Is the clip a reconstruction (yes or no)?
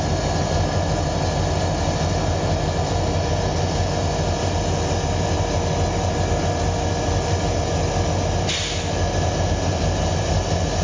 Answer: no